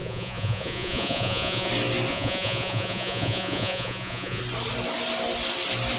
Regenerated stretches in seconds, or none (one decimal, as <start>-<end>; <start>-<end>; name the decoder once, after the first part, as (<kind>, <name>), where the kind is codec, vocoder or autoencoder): 0.0-1.7 (vocoder, Vocos); 2.1-4.4